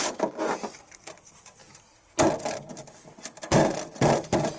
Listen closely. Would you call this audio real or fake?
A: real